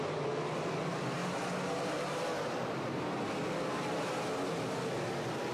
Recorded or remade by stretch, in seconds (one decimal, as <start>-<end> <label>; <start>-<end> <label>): 0.0-5.5 recorded